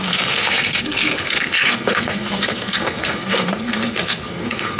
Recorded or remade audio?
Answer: remade